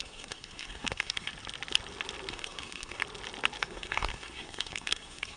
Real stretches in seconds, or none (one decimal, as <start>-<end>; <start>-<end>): 1.3-2.3; 3.0-3.6

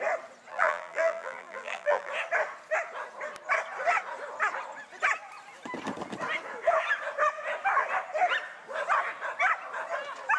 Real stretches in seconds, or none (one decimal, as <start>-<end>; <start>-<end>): 0.0-0.5; 2.1-10.4